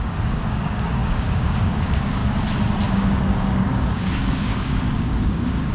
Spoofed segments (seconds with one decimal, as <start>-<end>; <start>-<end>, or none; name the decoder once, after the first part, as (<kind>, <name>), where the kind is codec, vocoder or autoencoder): 0.0-2.2 (codec, DAC); 2.9-5.7